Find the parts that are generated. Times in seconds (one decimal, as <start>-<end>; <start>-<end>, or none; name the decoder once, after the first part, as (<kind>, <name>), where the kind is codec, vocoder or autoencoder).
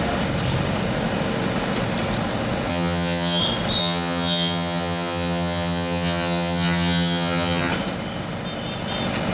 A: 2.7-3.4 (vocoder, HiFi-GAN); 3.8-7.7